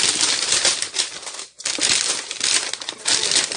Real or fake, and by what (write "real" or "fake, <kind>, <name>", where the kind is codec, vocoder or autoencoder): real